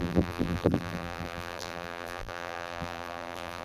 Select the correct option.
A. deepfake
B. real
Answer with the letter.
A